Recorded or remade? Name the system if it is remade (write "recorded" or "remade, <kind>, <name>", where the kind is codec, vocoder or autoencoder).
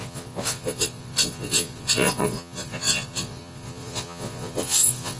remade, vocoder, Vocos